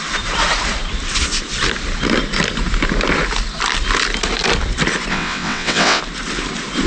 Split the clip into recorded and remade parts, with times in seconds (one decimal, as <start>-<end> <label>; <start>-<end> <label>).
0.0-5.1 recorded; 5.1-6.0 remade; 6.0-6.9 recorded